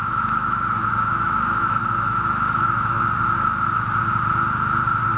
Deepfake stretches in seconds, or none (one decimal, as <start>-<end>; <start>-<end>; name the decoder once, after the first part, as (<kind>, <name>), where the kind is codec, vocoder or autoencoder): 0.0-3.1 (autoencoder, DAC-VAE)